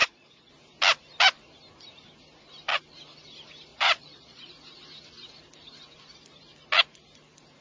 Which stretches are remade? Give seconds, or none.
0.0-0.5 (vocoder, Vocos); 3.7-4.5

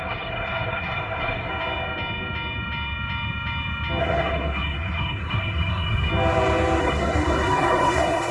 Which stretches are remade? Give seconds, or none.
0.0-1.5 (codec, SNAC); 4.0-6.1; 6.8-8.3

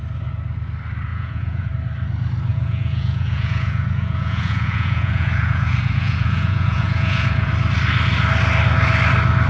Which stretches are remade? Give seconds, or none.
1.1-1.7 (vocoder, Vocos); 2.5-7.5

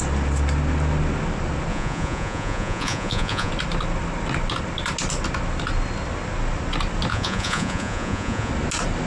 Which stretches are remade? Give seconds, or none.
1.7-3.5 (vocoder, Vocos); 7.1-8.5